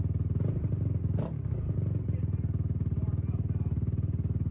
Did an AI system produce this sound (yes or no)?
no